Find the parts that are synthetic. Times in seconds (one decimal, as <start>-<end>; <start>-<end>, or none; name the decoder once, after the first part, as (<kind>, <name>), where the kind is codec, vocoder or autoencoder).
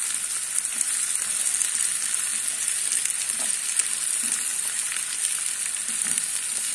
none